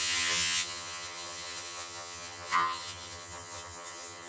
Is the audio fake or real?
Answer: fake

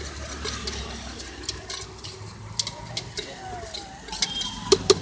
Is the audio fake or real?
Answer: real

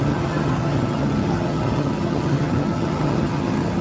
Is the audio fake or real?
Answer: fake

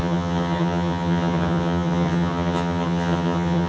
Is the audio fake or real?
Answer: fake